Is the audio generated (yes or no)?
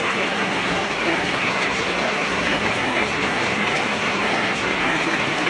yes